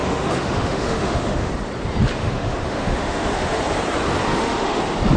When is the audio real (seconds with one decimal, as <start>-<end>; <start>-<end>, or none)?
1.5-2.2; 3.6-4.3; 4.8-5.2